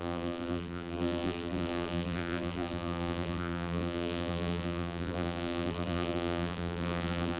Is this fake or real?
fake